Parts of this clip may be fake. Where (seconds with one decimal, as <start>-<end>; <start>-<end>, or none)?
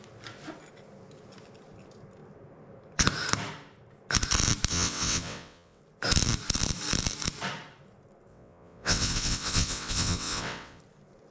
4.7-5.8; 8.3-10.8